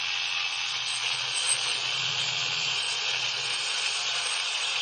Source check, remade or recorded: remade